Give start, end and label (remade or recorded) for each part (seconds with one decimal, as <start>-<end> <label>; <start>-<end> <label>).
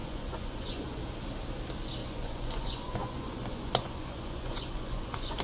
0.0-1.0 remade; 1.0-2.0 recorded; 2.0-5.4 remade